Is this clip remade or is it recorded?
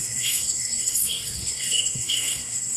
remade